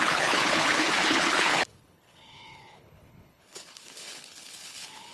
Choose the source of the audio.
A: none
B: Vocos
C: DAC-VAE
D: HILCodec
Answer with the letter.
D